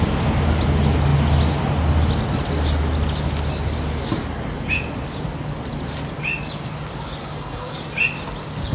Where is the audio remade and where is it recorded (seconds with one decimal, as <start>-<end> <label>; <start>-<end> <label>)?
0.0-7.2 recorded; 7.2-7.8 remade; 7.8-8.7 recorded